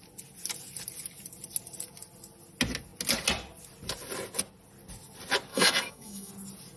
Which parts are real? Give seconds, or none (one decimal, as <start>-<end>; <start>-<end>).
0.0-5.5; 6.3-6.8